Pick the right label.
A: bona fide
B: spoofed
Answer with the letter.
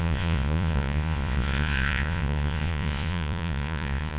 B